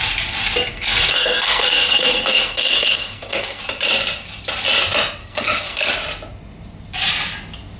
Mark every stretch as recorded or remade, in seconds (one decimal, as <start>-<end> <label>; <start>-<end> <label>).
0.0-0.7 recorded; 0.7-3.6 remade; 3.6-5.2 recorded; 5.2-5.9 remade; 5.9-7.8 recorded